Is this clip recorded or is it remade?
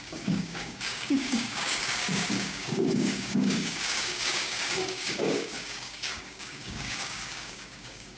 remade